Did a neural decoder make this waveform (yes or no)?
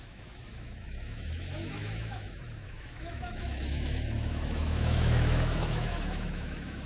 yes